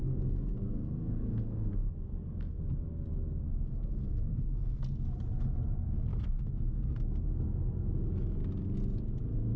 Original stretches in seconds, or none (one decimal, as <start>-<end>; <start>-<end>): 2.6-3.7; 4.8-6.1; 7.2-9.6